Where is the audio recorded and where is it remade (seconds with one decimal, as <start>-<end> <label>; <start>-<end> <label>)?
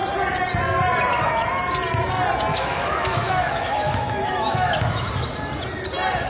0.0-2.5 recorded; 2.5-5.1 remade; 5.1-6.3 recorded